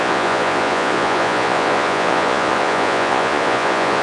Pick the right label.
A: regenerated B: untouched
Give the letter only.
A